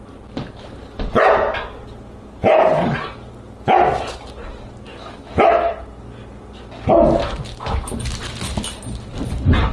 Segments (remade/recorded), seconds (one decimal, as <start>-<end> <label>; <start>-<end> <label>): 0.0-4.9 recorded; 4.9-5.5 remade; 5.5-9.7 recorded